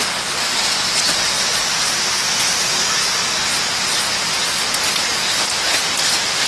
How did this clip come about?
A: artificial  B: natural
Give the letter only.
B